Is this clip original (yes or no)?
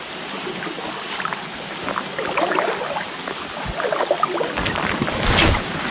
yes